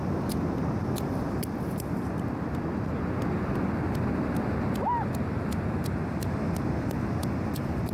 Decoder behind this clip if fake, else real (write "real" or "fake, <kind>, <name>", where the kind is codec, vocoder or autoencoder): real